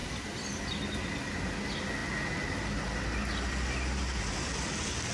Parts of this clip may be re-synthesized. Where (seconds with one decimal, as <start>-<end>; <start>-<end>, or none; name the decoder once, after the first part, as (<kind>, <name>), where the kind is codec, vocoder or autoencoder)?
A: none